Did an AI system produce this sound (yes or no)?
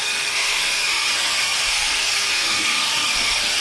yes